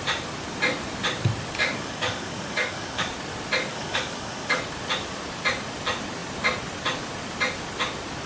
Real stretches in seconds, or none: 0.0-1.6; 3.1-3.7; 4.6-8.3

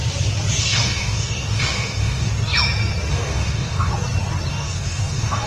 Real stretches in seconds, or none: 0.0-0.6; 2.3-3.1; 3.9-4.5